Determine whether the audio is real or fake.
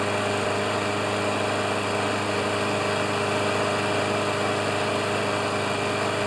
real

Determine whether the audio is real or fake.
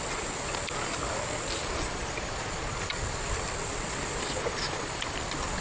real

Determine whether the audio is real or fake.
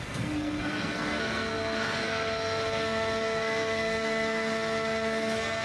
fake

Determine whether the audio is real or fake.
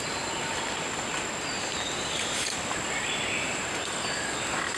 real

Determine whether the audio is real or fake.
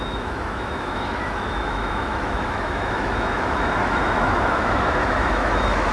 fake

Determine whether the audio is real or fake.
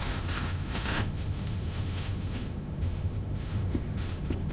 fake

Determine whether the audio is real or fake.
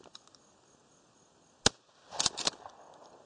real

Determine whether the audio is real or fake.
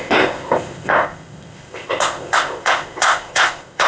fake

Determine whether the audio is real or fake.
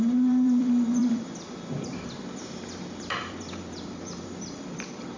fake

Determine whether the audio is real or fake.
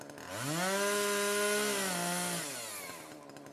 real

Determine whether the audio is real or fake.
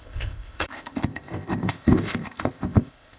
fake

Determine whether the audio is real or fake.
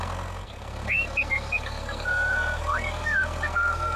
fake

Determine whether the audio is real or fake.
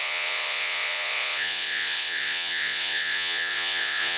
fake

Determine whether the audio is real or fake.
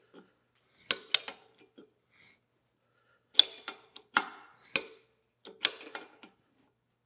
real